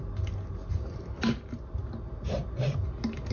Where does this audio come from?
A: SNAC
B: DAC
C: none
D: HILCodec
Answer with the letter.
C